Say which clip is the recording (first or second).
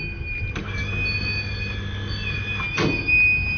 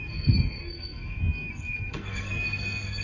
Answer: first